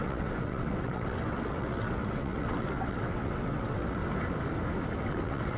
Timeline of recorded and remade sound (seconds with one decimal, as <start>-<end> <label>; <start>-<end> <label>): 0.0-4.0 remade; 4.0-5.0 recorded; 5.0-5.6 remade